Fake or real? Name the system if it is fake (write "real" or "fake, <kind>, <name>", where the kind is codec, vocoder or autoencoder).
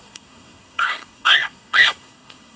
fake, codec, SNAC